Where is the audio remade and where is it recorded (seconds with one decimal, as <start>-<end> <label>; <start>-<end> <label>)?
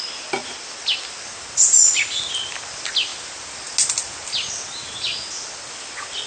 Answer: 0.0-6.3 recorded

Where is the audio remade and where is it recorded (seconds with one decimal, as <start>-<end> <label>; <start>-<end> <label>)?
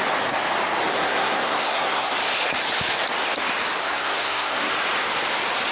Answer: 0.0-0.9 recorded; 0.9-2.1 remade; 2.1-3.8 recorded; 3.8-4.7 remade; 4.7-5.7 recorded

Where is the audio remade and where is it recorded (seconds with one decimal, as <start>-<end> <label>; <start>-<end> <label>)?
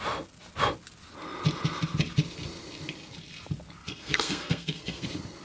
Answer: 0.0-3.8 recorded; 3.8-5.0 remade; 5.0-5.4 recorded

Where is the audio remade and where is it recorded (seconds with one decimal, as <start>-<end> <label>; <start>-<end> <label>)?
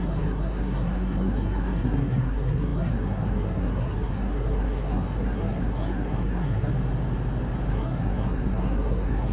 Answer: 0.0-6.7 remade; 6.7-7.7 recorded; 7.7-9.3 remade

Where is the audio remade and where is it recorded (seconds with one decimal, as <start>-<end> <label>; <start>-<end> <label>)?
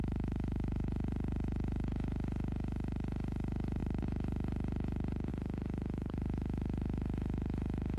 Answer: 0.0-8.0 recorded